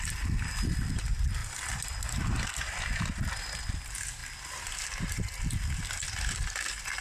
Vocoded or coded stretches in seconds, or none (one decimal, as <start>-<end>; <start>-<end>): none